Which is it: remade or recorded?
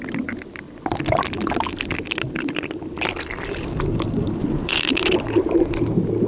remade